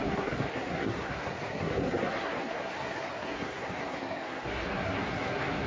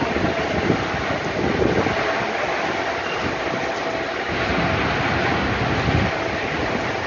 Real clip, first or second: second